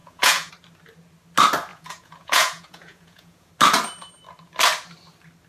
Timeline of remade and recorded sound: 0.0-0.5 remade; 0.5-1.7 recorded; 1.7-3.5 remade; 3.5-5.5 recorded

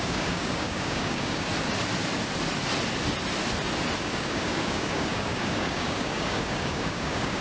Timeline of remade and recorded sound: 0.0-1.5 remade; 1.5-4.0 recorded; 4.0-7.4 remade

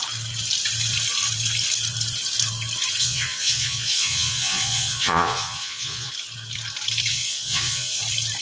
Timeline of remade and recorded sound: 0.0-3.0 recorded; 3.0-6.1 remade; 6.1-7.1 recorded; 7.1-8.0 remade; 8.0-8.4 recorded

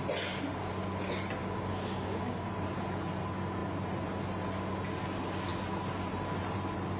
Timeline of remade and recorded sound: 0.0-1.4 recorded; 1.4-2.5 remade; 2.5-7.0 recorded